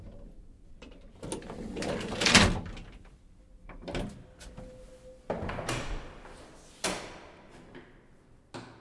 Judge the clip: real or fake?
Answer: real